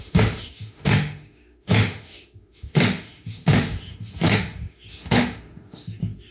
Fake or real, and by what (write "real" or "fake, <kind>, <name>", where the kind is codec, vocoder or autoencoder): fake, autoencoder, DAC-VAE